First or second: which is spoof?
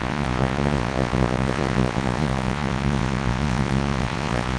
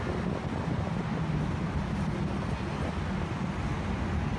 first